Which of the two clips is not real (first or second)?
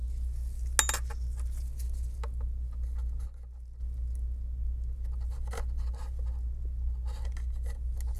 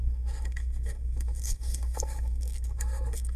second